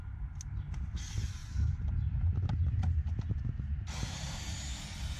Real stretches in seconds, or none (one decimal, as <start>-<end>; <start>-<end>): 0.0-1.4; 3.1-5.2